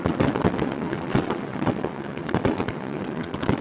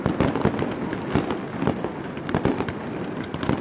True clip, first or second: second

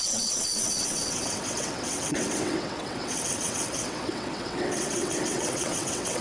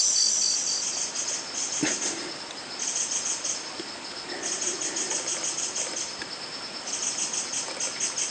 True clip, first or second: second